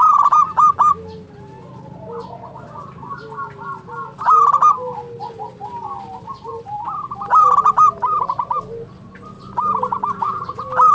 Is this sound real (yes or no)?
yes